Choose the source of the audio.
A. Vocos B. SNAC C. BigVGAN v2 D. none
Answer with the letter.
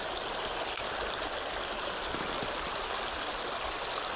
D